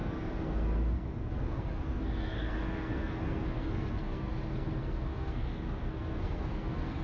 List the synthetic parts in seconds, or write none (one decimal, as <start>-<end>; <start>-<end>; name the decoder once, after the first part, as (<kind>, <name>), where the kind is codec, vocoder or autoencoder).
0.0-7.0 (codec, SNAC)